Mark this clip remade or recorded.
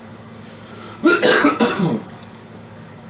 remade